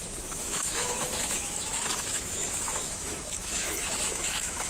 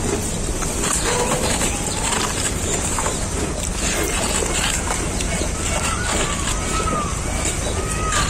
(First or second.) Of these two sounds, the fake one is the first